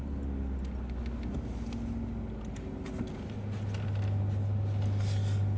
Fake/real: real